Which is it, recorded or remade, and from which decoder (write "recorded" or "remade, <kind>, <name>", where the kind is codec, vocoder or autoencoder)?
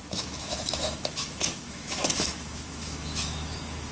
remade, autoencoder, DAC-VAE